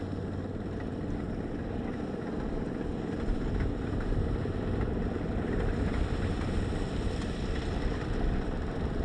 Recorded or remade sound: recorded